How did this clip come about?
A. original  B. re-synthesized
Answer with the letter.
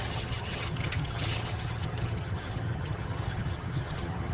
B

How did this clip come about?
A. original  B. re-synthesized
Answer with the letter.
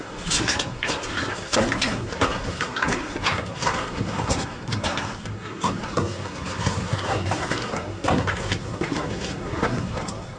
B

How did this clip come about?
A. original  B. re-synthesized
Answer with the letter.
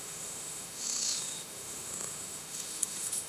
B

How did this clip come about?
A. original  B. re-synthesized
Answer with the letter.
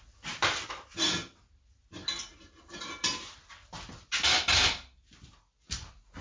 A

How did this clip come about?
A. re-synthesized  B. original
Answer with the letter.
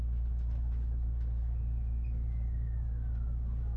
B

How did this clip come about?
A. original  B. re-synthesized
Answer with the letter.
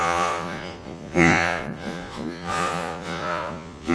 B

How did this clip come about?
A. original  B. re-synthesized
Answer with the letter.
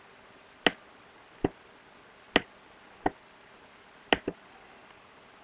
A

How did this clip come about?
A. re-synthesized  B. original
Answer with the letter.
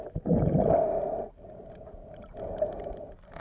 B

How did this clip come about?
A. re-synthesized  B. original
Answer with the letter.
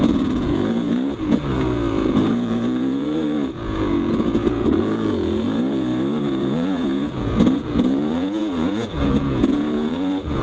A